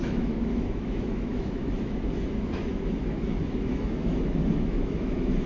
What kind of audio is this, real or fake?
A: fake